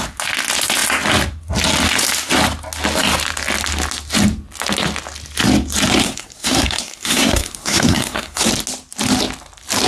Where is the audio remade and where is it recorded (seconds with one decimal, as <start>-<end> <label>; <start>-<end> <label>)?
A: 0.0-6.0 recorded; 6.0-8.5 remade; 8.5-9.9 recorded

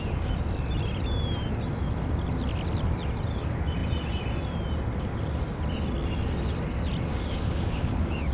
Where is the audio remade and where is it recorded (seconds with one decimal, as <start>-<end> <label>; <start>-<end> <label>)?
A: 0.0-7.1 recorded; 7.1-8.3 remade

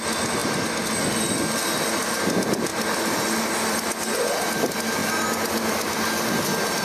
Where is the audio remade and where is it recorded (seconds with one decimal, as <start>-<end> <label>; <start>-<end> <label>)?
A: 0.0-6.8 recorded

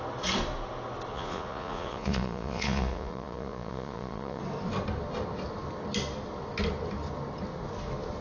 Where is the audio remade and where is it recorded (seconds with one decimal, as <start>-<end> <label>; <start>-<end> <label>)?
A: 0.0-1.1 recorded; 1.1-4.4 remade; 4.4-8.2 recorded

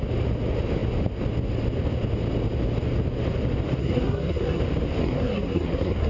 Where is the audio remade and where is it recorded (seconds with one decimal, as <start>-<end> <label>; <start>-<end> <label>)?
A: 0.0-3.8 recorded; 3.8-4.6 remade; 4.6-5.0 recorded; 5.0-6.1 remade

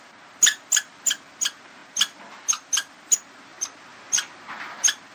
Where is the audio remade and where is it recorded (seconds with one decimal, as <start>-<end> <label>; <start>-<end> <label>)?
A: 0.0-5.1 recorded

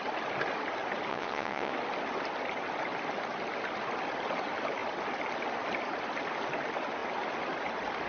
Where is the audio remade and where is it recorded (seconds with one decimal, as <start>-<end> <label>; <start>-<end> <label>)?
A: 0.0-1.1 recorded; 1.1-1.7 remade; 1.7-8.1 recorded